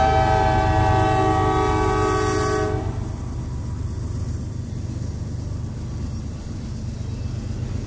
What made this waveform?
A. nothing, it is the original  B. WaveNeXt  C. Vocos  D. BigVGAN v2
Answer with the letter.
A